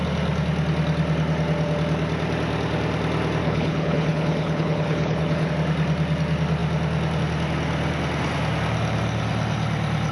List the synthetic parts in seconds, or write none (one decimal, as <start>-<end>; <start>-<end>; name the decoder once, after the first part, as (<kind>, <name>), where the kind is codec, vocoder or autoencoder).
3.4-5.5 (codec, HILCodec)